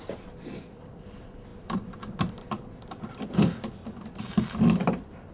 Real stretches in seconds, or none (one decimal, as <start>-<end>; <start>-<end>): none